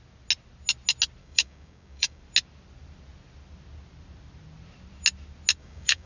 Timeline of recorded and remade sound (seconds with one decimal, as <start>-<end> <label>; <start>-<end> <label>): 0.0-1.2 recorded; 1.2-2.2 remade; 2.2-5.6 recorded; 5.6-6.1 remade